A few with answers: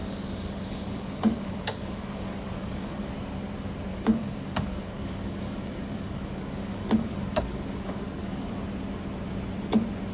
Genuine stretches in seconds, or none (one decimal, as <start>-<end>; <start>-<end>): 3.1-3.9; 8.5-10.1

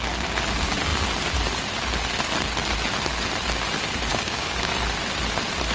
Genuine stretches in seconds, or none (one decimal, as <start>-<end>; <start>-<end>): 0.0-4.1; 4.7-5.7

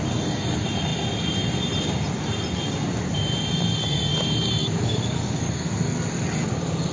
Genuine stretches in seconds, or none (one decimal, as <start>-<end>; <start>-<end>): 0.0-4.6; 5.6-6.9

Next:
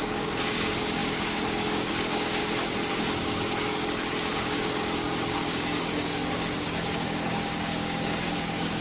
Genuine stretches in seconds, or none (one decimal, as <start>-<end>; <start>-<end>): 2.4-2.9

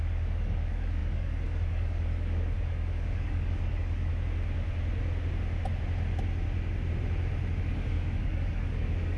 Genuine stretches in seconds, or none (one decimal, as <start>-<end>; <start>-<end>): 4.1-7.6

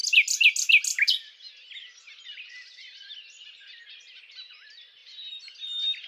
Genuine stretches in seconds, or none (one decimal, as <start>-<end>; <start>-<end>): 0.0-6.1

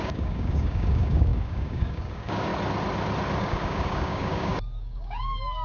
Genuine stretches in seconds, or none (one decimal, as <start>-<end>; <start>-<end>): 2.5-3.4